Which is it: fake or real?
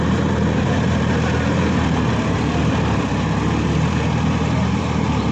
fake